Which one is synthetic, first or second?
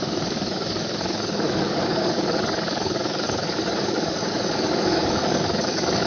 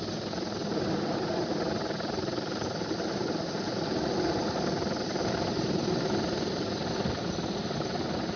first